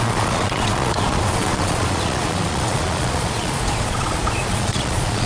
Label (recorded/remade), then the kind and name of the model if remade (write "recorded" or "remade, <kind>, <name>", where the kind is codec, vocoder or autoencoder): remade, vocoder, Vocos